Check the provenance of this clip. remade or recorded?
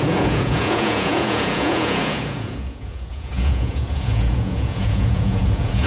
remade